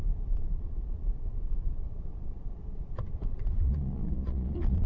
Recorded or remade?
remade